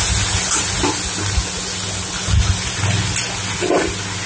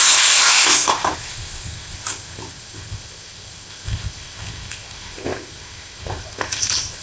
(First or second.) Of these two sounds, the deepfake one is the second